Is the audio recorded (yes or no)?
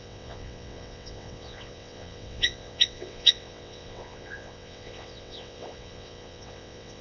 no